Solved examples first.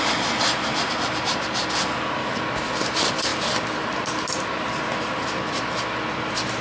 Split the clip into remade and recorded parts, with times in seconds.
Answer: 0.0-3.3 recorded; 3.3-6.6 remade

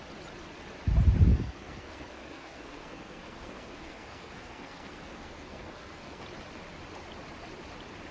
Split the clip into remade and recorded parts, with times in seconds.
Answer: 0.0-1.3 recorded; 1.3-6.2 remade; 6.2-8.1 recorded